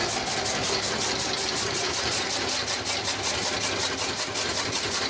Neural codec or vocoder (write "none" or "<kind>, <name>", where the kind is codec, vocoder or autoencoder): none